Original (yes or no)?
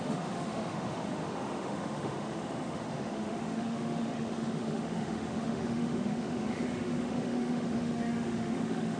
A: no